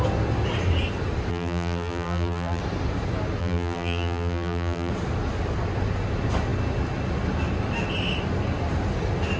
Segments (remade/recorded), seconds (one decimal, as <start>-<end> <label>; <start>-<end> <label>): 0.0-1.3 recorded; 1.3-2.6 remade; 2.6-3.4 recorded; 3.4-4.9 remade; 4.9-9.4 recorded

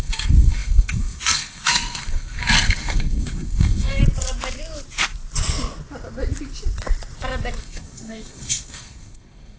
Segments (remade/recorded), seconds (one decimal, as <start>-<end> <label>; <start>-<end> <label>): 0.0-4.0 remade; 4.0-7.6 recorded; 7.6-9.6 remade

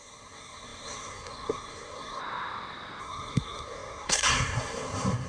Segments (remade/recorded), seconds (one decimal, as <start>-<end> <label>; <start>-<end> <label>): 0.0-2.2 remade; 2.2-3.0 recorded; 3.0-5.3 remade

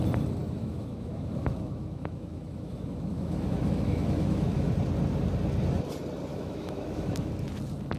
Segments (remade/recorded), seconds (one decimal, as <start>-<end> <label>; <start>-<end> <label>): 0.0-0.4 recorded; 0.4-4.7 remade; 4.7-6.3 recorded; 6.3-7.3 remade; 7.3-8.0 recorded

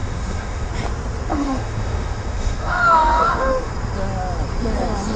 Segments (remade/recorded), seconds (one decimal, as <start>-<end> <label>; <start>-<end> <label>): 0.0-0.7 remade; 0.7-1.3 recorded; 1.3-3.7 remade; 3.7-5.2 recorded

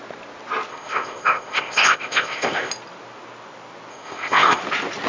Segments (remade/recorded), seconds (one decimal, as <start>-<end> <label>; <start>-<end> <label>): 0.0-0.7 recorded; 0.7-2.7 remade; 2.7-3.9 recorded; 3.9-4.6 remade; 4.6-5.1 recorded